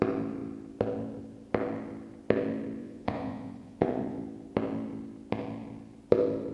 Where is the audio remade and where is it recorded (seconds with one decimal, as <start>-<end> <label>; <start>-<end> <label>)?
0.0-2.8 recorded; 2.8-4.2 remade; 4.2-6.5 recorded